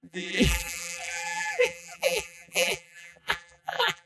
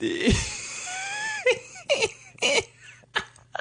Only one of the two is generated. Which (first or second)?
first